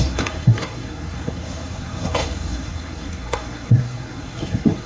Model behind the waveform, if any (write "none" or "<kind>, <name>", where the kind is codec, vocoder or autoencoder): codec, SNAC